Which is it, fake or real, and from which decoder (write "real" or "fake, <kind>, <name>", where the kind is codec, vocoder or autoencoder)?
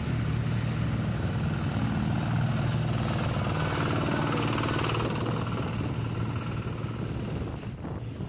real